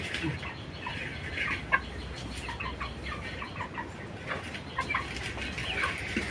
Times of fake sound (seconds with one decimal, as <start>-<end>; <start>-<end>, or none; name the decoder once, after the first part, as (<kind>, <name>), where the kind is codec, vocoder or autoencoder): 0.0-1.1 (vocoder, BigVGAN v2); 4.9-5.6